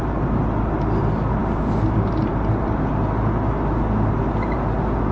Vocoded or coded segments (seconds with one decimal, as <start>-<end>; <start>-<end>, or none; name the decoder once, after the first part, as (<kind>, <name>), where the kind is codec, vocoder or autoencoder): none